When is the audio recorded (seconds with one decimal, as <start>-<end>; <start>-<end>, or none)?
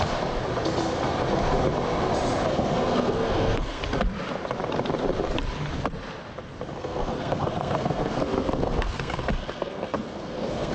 0.0-2.5; 3.8-6.8